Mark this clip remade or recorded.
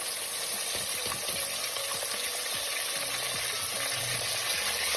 recorded